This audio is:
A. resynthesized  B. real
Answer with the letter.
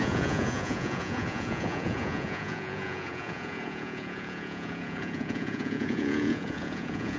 A